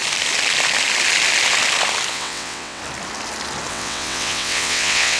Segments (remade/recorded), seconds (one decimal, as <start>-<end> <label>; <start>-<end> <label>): 0.0-2.1 recorded; 2.1-2.8 remade; 2.8-3.7 recorded; 3.7-5.2 remade